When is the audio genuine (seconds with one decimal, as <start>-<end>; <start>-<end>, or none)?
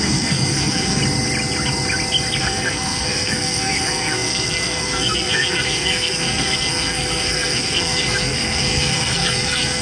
1.0-2.4